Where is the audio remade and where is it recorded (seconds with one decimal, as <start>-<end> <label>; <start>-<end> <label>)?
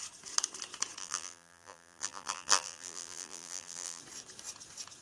0.0-1.0 recorded; 1.0-4.0 remade; 4.0-5.0 recorded